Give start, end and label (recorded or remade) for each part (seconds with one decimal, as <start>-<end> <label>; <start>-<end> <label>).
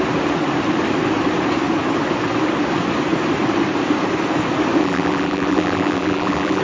0.0-4.8 recorded; 4.8-6.6 remade